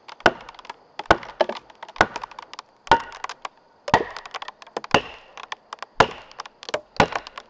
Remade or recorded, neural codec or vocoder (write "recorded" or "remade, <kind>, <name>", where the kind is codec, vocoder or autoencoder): recorded